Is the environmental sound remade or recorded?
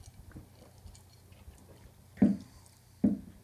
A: recorded